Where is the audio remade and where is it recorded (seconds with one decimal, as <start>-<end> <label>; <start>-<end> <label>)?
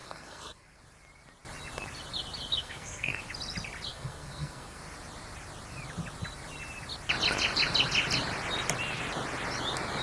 0.0-0.8 remade; 0.8-2.6 recorded; 2.6-3.2 remade; 3.2-3.9 recorded; 3.9-4.8 remade; 4.8-10.0 recorded